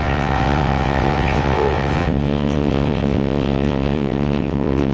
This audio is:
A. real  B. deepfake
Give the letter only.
B